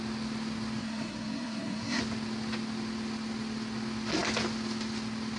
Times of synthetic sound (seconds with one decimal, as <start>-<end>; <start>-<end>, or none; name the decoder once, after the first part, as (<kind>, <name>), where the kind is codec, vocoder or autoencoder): 0.8-2.0 (codec, SNAC)